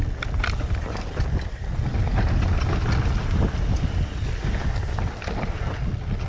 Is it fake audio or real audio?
real